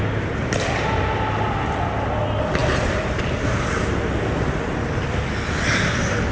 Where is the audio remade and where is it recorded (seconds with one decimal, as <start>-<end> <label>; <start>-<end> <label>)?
0.0-6.3 recorded